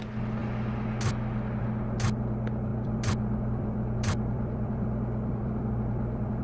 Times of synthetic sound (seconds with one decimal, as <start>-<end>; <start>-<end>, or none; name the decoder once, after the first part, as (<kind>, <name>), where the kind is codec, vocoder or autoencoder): 2.7-6.4 (vocoder, BigVGAN v2)